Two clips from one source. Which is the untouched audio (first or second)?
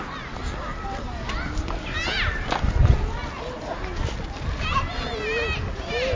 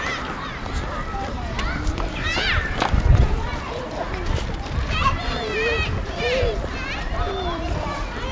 first